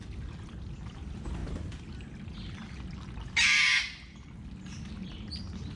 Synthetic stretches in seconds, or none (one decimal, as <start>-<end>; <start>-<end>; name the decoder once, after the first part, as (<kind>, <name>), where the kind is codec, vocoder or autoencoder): none